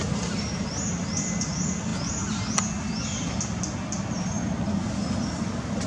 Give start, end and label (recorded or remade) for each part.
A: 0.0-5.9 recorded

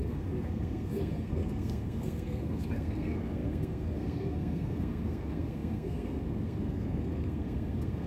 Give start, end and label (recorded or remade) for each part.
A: 0.0-8.1 remade

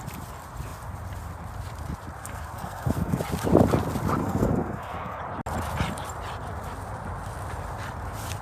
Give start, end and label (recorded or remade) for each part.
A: 0.0-2.2 recorded; 2.2-3.2 remade; 3.2-4.2 recorded; 4.2-5.2 remade; 5.2-8.4 recorded

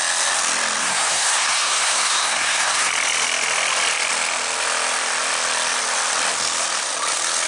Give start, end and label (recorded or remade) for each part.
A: 0.0-0.8 recorded; 0.8-2.9 remade; 2.9-7.5 recorded

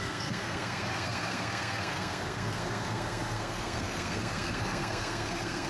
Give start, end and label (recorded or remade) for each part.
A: 0.0-5.7 remade

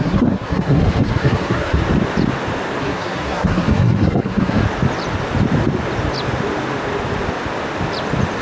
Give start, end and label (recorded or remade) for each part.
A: 0.0-1.8 remade; 1.8-2.8 recorded; 2.8-4.6 remade; 4.6-8.4 recorded

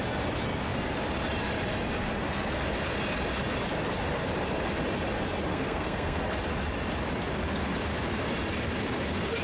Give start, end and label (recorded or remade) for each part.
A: 0.0-5.5 recorded; 5.5-6.2 remade; 6.2-9.4 recorded